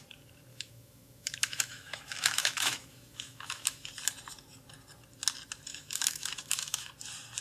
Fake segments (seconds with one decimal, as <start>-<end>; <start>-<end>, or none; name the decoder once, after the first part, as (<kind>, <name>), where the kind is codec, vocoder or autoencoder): 0.5-3.9 (autoencoder, DAC-VAE); 5.7-6.9